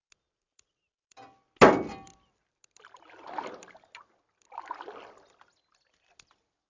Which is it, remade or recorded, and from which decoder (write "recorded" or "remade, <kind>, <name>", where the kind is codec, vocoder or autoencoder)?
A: recorded